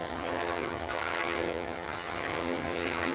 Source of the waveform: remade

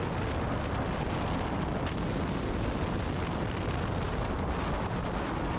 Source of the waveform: recorded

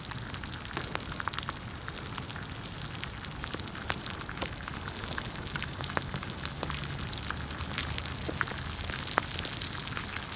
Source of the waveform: recorded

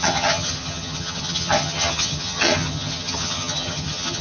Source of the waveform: remade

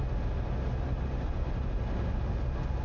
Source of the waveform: recorded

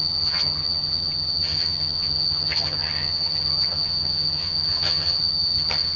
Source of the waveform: remade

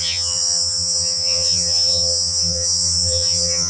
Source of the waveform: remade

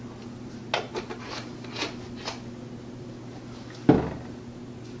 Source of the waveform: recorded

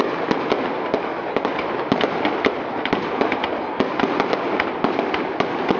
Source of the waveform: recorded